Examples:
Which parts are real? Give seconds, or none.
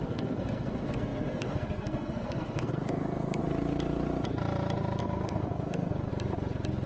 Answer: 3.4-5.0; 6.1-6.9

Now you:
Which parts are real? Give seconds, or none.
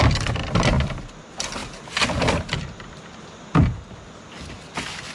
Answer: 0.0-5.1